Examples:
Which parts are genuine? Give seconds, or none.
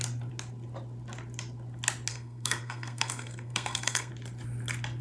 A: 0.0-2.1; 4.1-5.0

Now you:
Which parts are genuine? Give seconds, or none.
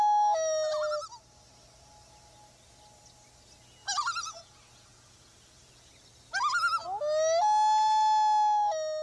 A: 0.0-3.8; 5.9-9.0